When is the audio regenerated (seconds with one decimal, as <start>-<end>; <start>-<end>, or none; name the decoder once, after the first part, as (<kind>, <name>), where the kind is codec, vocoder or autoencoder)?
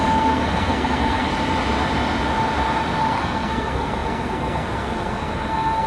0.0-1.3 (codec, SNAC); 3.0-5.9